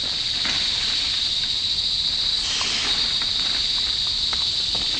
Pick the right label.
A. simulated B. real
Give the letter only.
B